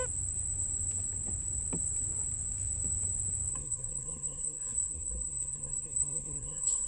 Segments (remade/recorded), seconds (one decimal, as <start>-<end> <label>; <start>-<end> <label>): 0.0-3.5 recorded; 3.5-6.9 remade

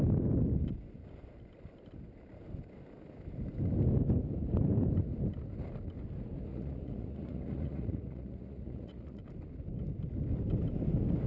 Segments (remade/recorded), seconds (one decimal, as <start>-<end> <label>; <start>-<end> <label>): 0.0-6.5 recorded; 6.5-9.2 remade; 9.2-11.3 recorded

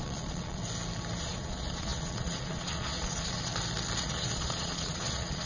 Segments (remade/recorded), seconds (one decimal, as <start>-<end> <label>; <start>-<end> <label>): 0.0-0.6 remade; 0.6-1.2 recorded; 1.2-3.5 remade; 3.5-4.0 recorded; 4.0-5.5 remade